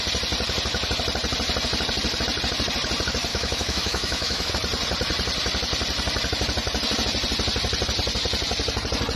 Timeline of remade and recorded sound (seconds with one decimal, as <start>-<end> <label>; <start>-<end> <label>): 0.0-3.3 recorded; 3.3-4.5 remade; 4.5-9.2 recorded